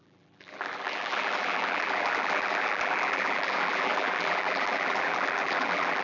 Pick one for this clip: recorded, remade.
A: remade